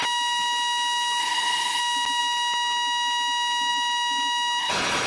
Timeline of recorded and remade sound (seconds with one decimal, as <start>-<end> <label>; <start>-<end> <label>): 0.0-1.2 recorded; 1.2-1.8 remade; 1.8-4.6 recorded; 4.6-5.1 remade